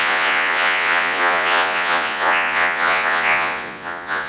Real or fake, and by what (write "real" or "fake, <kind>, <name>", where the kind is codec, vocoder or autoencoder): fake, vocoder, Vocos